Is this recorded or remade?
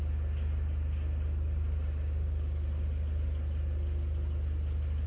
recorded